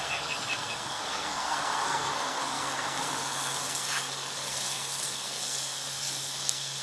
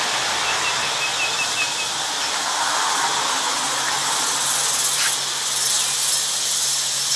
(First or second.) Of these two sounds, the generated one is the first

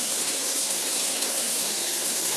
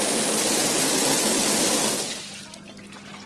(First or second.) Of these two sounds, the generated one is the first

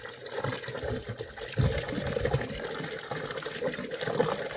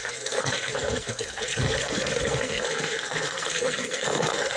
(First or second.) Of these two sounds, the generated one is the second